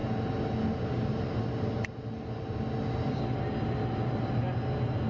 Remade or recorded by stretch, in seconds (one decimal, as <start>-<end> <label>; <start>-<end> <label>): 0.0-5.1 recorded